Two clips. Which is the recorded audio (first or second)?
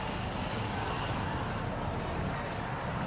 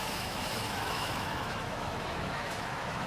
first